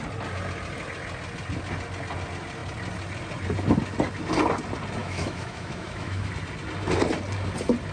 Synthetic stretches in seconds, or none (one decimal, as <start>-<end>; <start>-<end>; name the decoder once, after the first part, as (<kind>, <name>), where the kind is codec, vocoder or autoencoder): 5.0-6.3 (autoencoder, DAC-VAE)